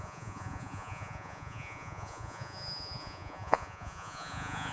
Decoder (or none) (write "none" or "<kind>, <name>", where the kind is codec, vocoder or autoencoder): vocoder, Vocos